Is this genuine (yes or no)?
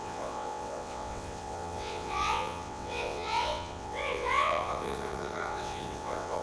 no